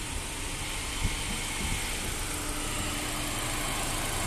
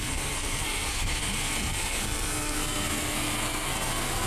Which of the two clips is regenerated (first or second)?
second